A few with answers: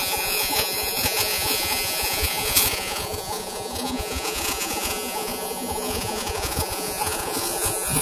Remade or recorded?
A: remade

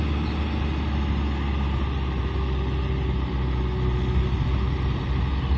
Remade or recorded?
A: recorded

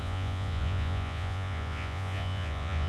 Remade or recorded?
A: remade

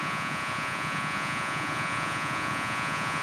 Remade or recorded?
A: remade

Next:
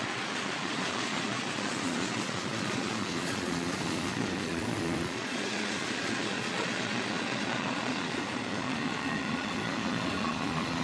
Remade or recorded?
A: remade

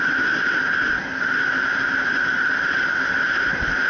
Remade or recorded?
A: recorded